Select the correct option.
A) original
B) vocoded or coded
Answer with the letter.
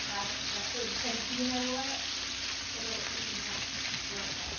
A